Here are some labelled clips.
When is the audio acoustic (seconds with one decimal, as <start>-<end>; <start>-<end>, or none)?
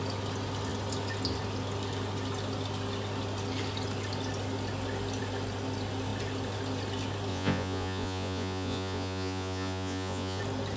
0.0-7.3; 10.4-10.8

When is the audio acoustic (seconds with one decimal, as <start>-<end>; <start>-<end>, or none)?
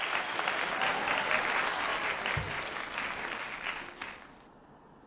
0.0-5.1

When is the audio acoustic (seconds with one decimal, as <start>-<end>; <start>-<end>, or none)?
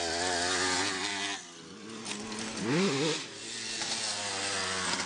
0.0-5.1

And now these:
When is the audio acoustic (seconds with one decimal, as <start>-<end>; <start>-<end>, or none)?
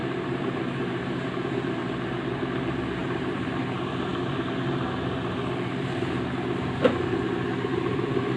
1.2-3.0; 3.5-8.4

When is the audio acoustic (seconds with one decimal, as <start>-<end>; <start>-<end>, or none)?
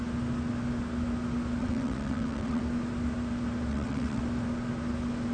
0.0-1.6; 2.6-3.7; 4.2-5.3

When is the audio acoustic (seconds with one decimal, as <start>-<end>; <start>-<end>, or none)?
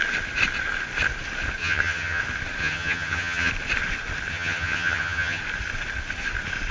0.0-1.6; 2.2-2.6; 3.5-4.3; 5.4-6.7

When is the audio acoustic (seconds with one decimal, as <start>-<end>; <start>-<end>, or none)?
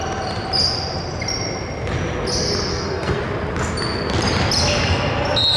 0.0-2.7; 3.2-5.6